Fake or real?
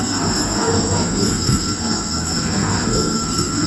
fake